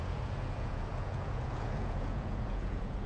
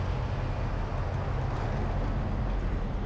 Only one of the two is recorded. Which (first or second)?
second